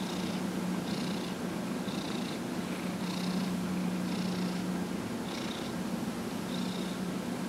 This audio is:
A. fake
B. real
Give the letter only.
B